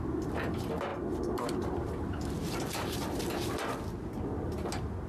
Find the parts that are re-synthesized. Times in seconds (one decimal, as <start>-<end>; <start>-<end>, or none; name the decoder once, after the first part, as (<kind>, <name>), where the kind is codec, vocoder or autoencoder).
0.9-4.0 (vocoder, BigVGAN v2)